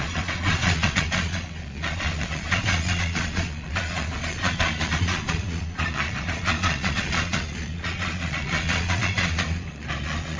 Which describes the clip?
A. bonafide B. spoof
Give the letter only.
B